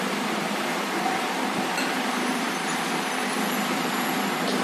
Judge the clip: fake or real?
fake